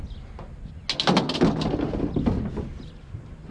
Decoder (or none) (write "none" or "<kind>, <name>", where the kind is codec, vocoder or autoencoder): none